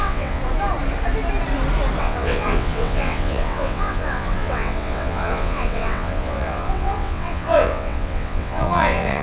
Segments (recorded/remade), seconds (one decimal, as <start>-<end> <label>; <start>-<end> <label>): 0.0-0.4 remade; 0.4-2.0 recorded; 2.0-9.2 remade